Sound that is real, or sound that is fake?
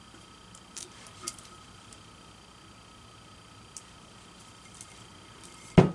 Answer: real